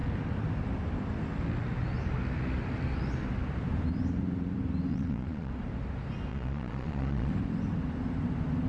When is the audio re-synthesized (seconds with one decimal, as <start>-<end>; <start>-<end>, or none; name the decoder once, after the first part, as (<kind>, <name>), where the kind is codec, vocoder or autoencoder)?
4.9-5.5 (vocoder, Vocos); 6.3-7.3